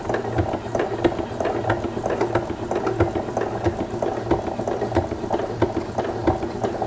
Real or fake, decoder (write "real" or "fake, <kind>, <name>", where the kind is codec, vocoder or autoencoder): real